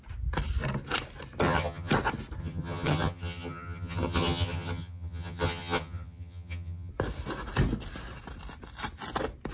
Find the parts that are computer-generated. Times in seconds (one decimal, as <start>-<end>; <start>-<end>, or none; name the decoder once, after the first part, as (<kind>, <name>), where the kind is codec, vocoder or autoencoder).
1.4-1.9 (vocoder, HiFi-GAN); 2.4-6.9